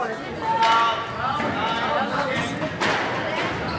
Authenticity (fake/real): real